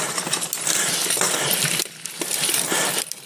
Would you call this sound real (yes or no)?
yes